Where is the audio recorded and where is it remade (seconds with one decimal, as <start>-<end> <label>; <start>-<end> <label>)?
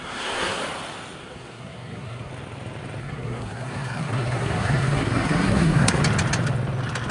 0.0-0.6 remade; 0.6-1.2 recorded; 1.2-2.3 remade; 2.3-3.0 recorded; 3.0-6.0 remade; 6.0-7.1 recorded